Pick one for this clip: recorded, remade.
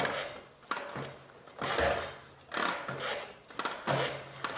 recorded